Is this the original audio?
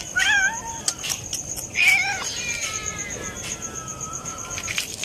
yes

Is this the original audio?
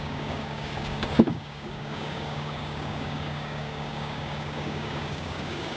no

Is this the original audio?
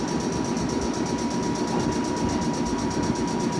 yes